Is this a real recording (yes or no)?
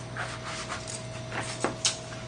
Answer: yes